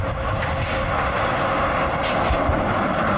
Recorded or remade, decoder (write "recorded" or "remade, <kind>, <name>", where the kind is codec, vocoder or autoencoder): recorded